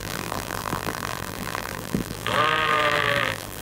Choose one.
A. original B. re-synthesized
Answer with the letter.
B